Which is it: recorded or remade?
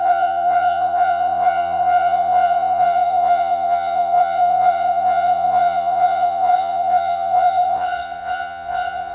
remade